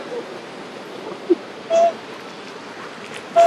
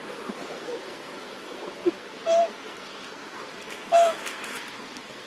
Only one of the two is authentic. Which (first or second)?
first